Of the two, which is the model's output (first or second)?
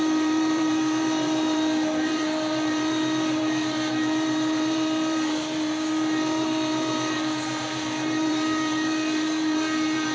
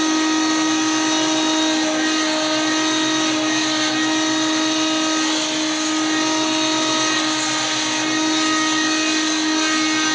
first